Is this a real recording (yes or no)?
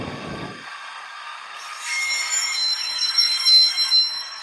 no